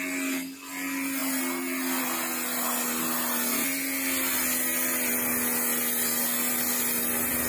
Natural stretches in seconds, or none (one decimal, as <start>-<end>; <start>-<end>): 0.0-7.5